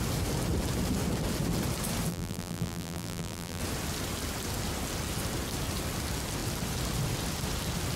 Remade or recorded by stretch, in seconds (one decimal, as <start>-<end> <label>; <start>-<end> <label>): 0.0-2.1 recorded; 2.1-3.6 remade; 3.6-8.0 recorded